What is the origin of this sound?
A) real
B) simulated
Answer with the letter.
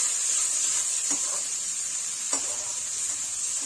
A